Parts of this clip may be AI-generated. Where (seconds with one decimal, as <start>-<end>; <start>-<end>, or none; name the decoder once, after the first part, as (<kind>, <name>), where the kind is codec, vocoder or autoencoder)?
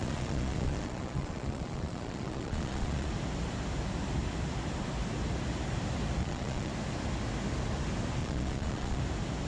0.0-3.1 (vocoder, Vocos); 6.2-6.7; 8.2-9.0